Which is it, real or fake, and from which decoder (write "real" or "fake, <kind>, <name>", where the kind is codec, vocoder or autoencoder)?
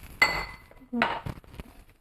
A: real